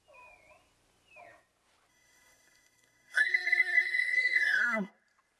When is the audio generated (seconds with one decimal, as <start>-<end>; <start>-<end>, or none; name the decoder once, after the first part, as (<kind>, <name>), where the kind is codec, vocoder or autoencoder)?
1.9-4.9 (codec, SNAC)